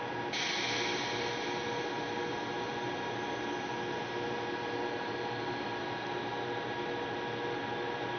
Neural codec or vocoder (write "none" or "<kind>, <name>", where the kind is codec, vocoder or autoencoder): none